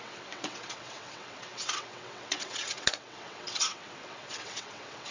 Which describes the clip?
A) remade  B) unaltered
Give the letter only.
A